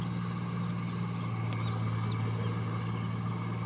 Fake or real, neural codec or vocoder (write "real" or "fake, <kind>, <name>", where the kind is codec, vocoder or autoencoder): real